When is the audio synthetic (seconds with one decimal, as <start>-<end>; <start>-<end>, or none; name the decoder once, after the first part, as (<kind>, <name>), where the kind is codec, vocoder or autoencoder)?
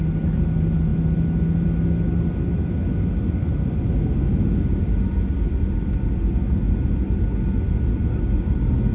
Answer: none